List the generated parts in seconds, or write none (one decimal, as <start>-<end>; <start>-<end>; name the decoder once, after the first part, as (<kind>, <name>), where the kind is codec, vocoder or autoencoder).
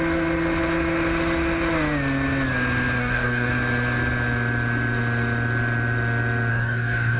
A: 3.0-3.5 (codec, DAC); 6.5-7.2